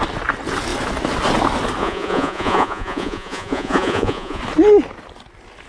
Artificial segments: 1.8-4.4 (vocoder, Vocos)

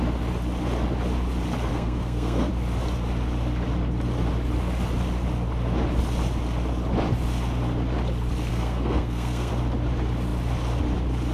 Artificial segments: 1.7-2.5 (codec, SNAC); 8.5-9.5

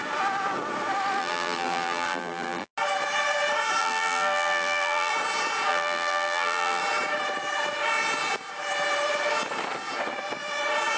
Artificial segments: 1.2-2.7 (vocoder, BigVGAN v2); 3.8-5.1; 5.7-6.8

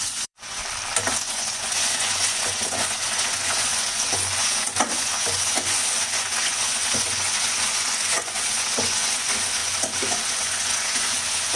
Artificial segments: 0.0-0.6 (vocoder, Vocos); 1.1-11.6

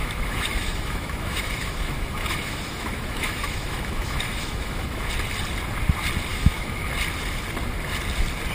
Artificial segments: 0.0-5.1 (autoencoder, DAC-VAE); 6.3-6.9

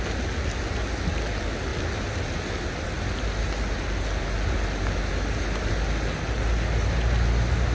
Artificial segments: none

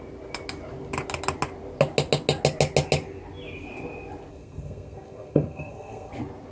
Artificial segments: 4.3-6.1 (codec, SNAC)

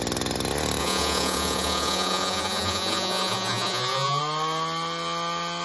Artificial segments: 0.8-4.2 (vocoder, Vocos)